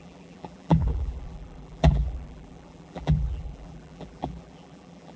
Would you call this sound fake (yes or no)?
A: yes